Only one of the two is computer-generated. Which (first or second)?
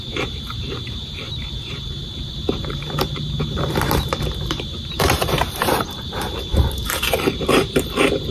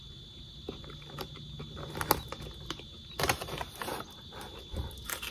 first